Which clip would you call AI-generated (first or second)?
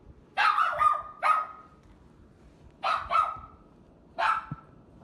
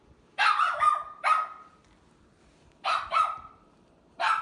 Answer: second